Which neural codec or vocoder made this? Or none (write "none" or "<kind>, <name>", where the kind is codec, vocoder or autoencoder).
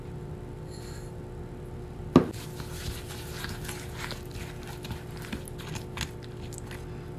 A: none